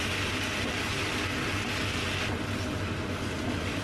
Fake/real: real